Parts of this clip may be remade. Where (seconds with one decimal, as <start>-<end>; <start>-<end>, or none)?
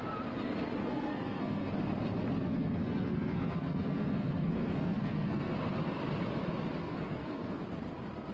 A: 0.8-1.7; 2.4-5.5; 6.8-7.6